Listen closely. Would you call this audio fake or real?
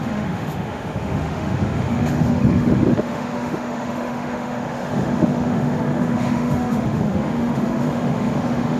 fake